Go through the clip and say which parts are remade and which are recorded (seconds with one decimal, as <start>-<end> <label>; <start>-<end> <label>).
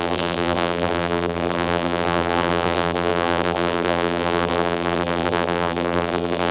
0.0-6.5 remade